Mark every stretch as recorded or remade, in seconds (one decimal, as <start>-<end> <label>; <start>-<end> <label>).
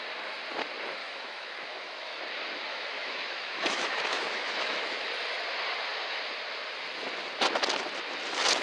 0.0-1.0 recorded; 1.0-2.2 remade; 2.2-2.7 recorded; 2.7-5.1 remade; 5.1-8.6 recorded